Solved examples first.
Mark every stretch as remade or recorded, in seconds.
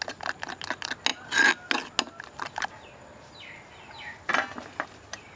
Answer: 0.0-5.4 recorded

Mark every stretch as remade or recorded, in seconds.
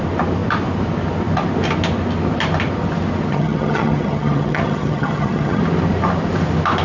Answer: 0.0-3.3 recorded; 3.3-5.6 remade; 5.6-6.8 recorded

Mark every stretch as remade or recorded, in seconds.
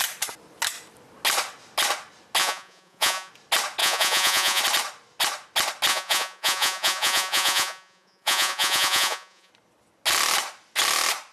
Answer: 0.0-2.4 recorded; 2.4-3.3 remade; 3.3-3.8 recorded; 3.8-4.6 remade; 4.6-5.9 recorded; 5.9-9.5 remade; 9.5-11.3 recorded